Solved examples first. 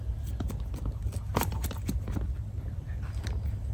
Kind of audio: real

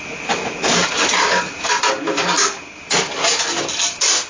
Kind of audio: real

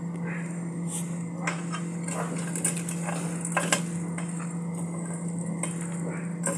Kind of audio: real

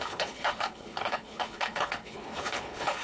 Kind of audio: fake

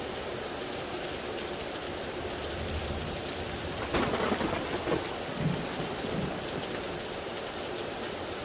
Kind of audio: real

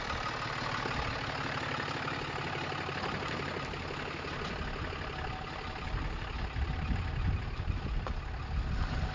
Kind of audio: real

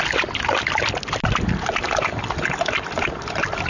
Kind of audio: real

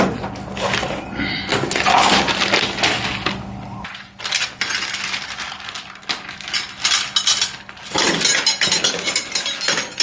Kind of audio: real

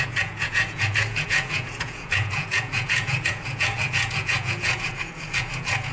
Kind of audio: fake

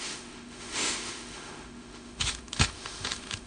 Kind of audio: fake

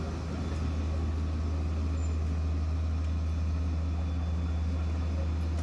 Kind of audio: real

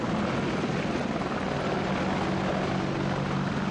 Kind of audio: real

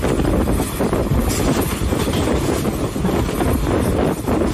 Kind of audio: real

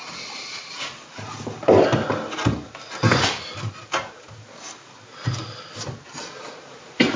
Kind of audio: real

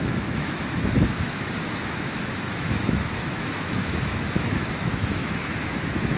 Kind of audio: fake